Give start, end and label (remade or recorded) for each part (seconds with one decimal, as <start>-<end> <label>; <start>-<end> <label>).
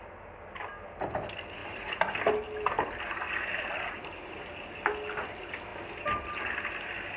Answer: 0.0-7.2 recorded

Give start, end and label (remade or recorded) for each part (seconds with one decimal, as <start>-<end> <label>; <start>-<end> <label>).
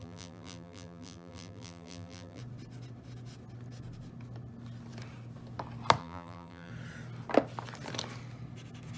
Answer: 0.0-2.4 remade; 2.4-6.0 recorded; 6.0-6.7 remade; 6.7-9.0 recorded